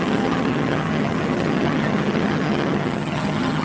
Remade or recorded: remade